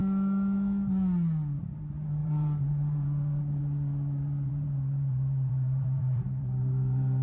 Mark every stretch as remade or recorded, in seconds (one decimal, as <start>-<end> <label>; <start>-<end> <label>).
0.0-1.6 recorded; 1.6-7.2 remade